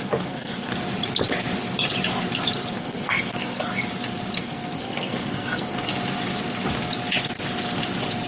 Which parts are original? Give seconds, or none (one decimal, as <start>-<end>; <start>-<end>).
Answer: 0.7-2.7; 3.7-4.4; 5.9-8.3